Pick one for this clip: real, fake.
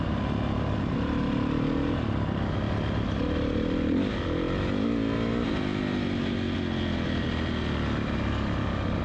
real